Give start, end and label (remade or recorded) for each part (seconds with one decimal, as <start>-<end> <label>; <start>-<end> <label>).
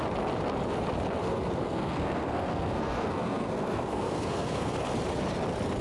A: 0.0-1.2 recorded; 1.2-4.7 remade; 4.7-5.8 recorded